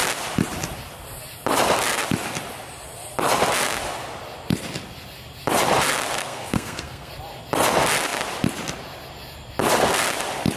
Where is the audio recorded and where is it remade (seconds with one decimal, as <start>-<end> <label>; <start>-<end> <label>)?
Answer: 0.0-6.2 recorded; 6.2-7.1 remade; 7.1-10.6 recorded